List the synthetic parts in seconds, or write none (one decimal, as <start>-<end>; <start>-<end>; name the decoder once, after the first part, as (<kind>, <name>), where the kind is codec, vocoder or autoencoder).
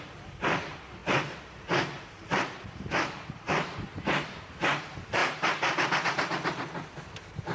0.0-1.0 (vocoder, BigVGAN v2); 1.5-5.2; 7.0-7.5